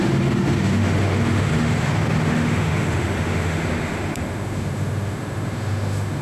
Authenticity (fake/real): fake